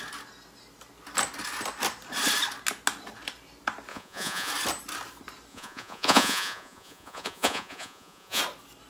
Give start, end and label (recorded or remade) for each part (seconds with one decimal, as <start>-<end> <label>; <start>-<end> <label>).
0.0-3.9 recorded; 3.9-4.5 remade; 4.5-5.5 recorded; 5.5-8.4 remade; 8.4-8.9 recorded